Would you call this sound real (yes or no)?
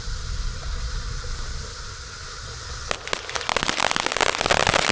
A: yes